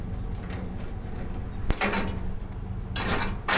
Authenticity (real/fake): real